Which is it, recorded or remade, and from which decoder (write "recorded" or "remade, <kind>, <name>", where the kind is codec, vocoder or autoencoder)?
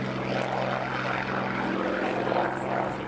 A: recorded